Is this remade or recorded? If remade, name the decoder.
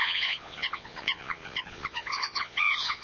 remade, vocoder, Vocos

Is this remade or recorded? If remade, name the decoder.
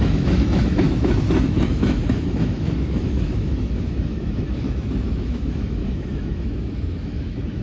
remade, autoencoder, DAC-VAE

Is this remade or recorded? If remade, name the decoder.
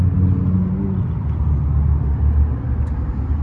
recorded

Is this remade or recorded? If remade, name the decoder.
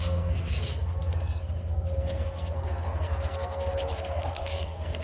remade, codec, SNAC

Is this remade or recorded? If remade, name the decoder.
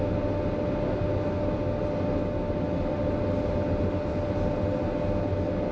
recorded